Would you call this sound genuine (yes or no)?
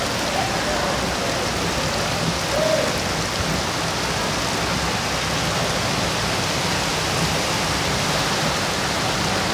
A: yes